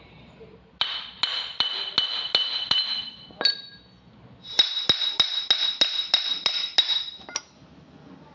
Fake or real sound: real